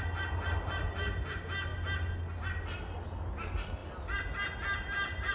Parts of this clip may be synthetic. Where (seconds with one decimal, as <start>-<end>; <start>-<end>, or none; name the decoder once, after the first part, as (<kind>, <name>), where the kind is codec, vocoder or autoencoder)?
none